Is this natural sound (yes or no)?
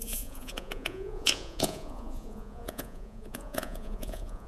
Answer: no